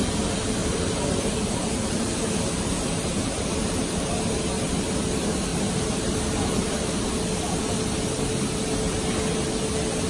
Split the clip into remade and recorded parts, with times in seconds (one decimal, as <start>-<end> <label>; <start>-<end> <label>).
0.0-0.6 recorded; 0.6-4.2 remade; 4.2-5.5 recorded; 5.5-7.0 remade; 7.0-10.1 recorded

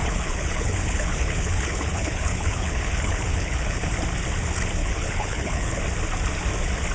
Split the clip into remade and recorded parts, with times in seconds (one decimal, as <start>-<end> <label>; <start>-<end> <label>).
0.0-3.9 remade; 3.9-4.8 recorded; 4.8-5.8 remade; 5.8-6.9 recorded

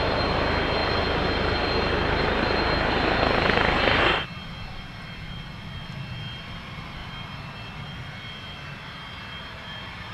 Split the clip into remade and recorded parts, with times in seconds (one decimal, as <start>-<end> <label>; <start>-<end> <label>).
0.0-10.1 recorded

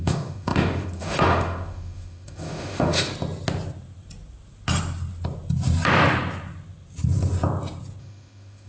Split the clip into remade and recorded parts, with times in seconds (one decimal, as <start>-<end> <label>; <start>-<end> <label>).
0.0-3.1 remade; 3.1-8.0 recorded; 8.0-8.7 remade